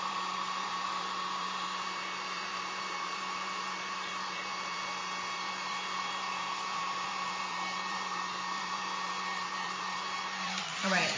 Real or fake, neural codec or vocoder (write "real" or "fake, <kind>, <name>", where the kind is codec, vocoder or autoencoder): fake, vocoder, BigVGAN v2